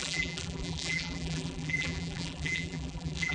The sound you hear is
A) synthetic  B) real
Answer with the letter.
A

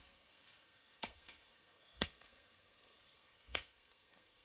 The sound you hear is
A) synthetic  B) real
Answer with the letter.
A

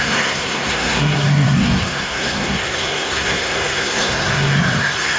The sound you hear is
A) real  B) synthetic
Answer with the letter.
B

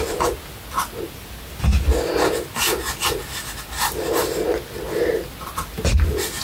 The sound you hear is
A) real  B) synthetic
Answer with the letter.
A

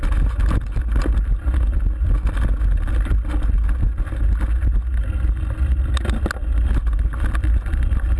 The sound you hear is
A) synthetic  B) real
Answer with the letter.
B